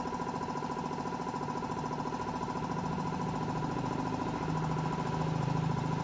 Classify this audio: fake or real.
real